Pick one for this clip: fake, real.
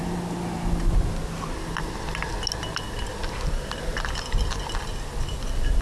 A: real